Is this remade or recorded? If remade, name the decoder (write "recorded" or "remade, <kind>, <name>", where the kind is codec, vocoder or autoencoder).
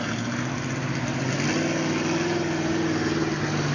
recorded